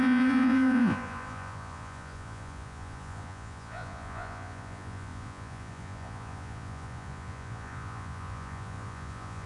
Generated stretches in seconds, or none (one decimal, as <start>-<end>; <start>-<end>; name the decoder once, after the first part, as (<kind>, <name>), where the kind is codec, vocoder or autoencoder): 0.0-9.5 (vocoder, Vocos)